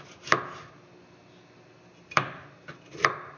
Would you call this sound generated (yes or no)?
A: no